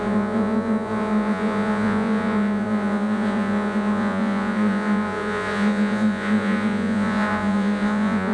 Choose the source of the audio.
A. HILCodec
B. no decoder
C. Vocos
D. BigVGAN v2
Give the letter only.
C